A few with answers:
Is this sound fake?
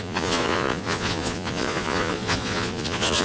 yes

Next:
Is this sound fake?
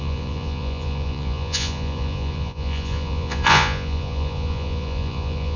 yes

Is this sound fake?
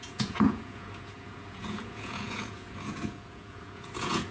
yes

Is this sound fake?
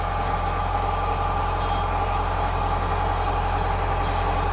no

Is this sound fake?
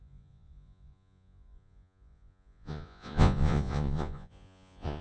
yes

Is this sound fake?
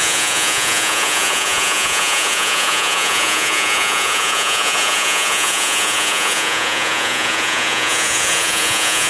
yes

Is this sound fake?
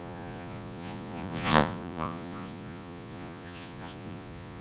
yes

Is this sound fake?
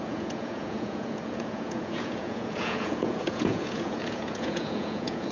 yes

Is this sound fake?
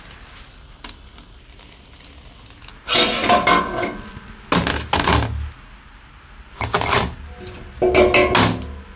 no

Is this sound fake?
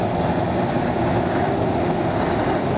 no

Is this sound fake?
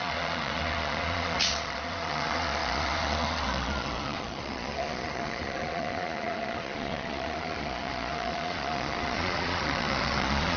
yes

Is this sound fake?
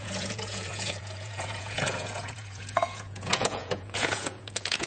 yes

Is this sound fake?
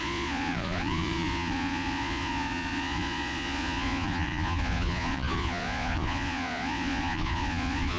yes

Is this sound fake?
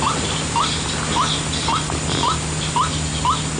no